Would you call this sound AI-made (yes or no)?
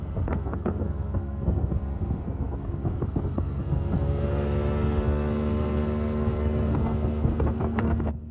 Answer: yes